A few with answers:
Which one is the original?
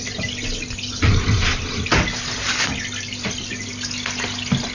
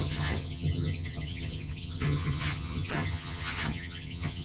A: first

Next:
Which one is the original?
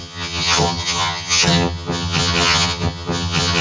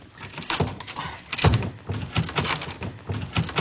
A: second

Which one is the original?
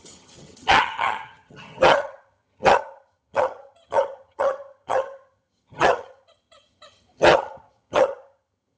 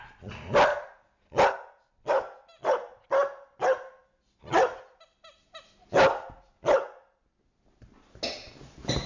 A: second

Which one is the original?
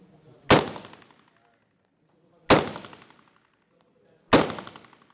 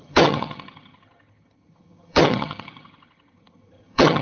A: first